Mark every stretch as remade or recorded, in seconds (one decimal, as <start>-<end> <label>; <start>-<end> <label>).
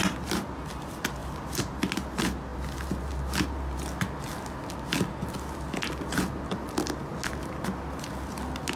0.0-1.2 recorded; 1.2-1.8 remade; 1.8-8.8 recorded